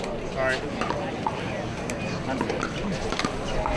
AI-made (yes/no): no